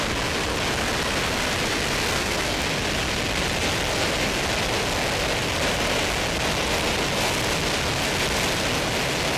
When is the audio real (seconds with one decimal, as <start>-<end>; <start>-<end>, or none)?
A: 0.0-2.1; 2.6-9.4